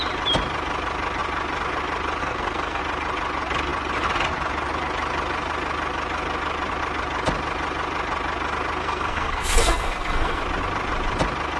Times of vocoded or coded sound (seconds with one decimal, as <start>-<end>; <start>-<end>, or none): 2.2-2.8; 8.8-10.4